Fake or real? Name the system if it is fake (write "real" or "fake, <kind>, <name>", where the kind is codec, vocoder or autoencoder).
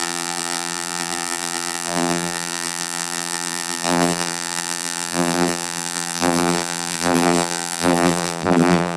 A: fake, vocoder, BigVGAN v2